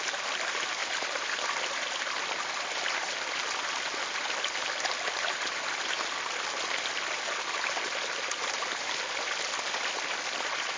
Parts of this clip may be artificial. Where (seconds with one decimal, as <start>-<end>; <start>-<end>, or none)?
none